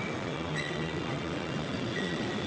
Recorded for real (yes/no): no